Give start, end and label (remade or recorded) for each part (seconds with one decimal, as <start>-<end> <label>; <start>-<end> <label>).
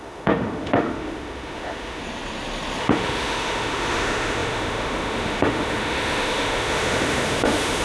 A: 0.0-2.0 remade; 2.0-2.8 recorded; 2.8-7.8 remade